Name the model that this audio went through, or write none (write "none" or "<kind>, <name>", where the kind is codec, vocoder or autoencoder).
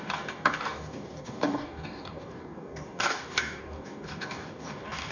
codec, DAC